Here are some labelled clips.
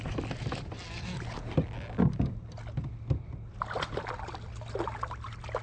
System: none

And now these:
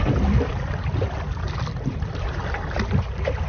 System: none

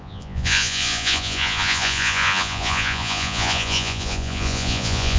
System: vocoder, Vocos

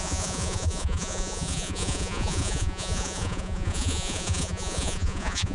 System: vocoder, Vocos